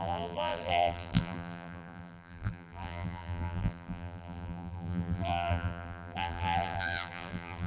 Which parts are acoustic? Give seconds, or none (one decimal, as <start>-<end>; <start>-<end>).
none